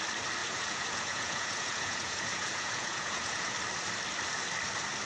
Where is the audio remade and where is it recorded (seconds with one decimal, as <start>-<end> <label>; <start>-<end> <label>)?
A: 0.0-0.4 recorded; 0.4-3.5 remade; 3.5-5.1 recorded